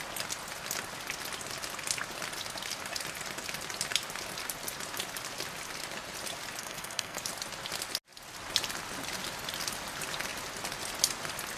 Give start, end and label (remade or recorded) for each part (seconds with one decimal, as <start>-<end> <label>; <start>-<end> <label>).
0.0-6.6 recorded; 6.6-7.2 remade; 7.2-11.6 recorded